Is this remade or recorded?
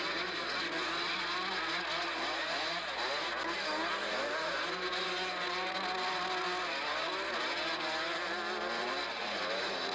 recorded